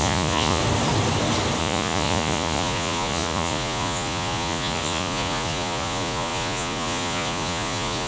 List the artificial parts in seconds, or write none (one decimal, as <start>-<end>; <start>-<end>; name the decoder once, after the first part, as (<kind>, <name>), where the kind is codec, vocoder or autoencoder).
0.0-0.6 (vocoder, Vocos); 1.6-8.1

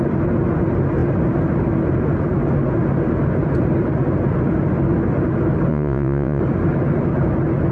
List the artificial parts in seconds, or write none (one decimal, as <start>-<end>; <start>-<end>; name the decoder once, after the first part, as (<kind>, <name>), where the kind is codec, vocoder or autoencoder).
5.7-6.4 (vocoder, Vocos)

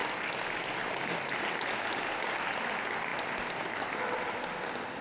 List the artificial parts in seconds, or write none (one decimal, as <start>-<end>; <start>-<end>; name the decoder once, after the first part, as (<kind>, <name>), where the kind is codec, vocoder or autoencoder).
none

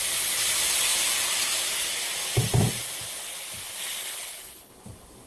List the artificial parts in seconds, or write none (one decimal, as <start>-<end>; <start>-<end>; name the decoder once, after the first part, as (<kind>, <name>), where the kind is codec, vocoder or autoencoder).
4.0-4.7 (codec, HILCodec)

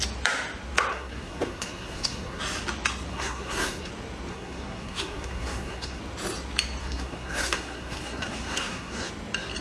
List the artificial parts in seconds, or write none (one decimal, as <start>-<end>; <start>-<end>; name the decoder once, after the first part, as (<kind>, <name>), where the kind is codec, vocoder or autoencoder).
0.9-2.4 (codec, SNAC); 3.1-3.9; 4.3-6.0; 6.8-9.1

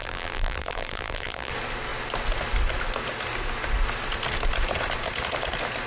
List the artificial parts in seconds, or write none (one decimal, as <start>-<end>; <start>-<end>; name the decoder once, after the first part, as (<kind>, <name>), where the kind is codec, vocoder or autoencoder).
0.0-1.5 (vocoder, BigVGAN v2)

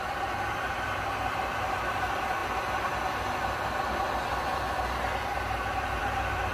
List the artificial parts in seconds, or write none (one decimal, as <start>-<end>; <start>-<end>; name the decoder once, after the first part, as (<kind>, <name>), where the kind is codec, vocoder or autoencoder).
0.0-6.5 (vocoder, BigVGAN v2)